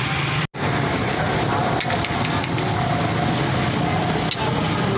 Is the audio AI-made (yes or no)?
no